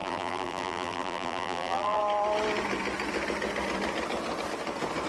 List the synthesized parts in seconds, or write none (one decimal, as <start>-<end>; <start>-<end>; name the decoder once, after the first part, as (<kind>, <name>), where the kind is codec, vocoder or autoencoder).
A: 0.0-2.0 (vocoder, BigVGAN v2)